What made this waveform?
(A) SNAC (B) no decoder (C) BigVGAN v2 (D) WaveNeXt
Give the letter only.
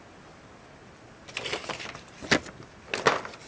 B